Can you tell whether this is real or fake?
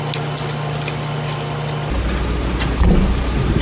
real